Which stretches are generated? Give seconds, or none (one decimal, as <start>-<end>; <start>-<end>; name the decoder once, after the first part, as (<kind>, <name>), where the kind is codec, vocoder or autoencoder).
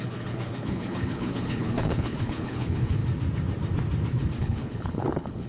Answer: 0.0-3.0 (codec, HILCodec); 4.4-5.5